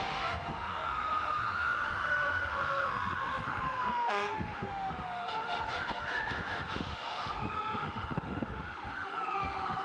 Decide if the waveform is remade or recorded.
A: remade